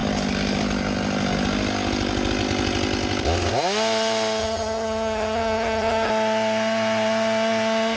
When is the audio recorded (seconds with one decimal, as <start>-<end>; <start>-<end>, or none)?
0.0-4.4; 6.1-8.0